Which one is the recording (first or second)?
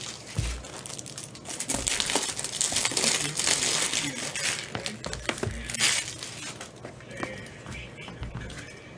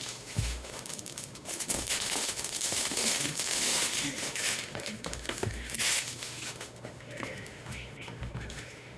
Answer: first